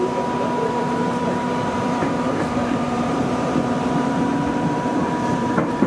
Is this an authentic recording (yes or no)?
no